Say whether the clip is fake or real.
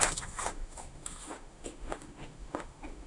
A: fake